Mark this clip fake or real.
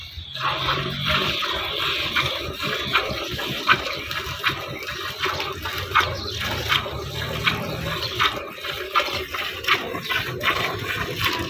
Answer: fake